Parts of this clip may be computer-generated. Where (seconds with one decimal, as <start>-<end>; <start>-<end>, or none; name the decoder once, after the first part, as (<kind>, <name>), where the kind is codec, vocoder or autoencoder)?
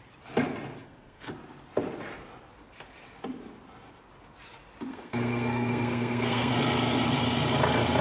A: 0.8-1.3 (codec, SNAC); 4.9-6.5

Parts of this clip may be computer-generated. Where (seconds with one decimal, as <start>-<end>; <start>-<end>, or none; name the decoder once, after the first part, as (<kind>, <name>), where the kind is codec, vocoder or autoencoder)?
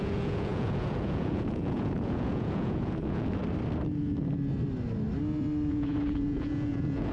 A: 0.0-3.4 (vocoder, Vocos); 5.7-7.1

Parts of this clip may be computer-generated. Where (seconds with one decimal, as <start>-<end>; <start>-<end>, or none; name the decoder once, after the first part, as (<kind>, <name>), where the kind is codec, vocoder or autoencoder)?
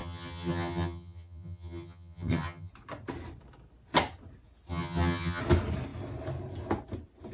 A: 0.0-2.7 (vocoder, HiFi-GAN); 4.7-5.4